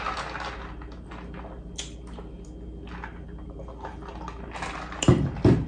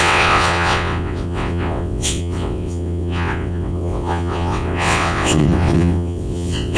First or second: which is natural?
first